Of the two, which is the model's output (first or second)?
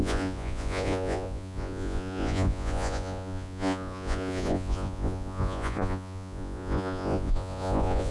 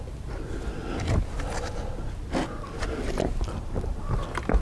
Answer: first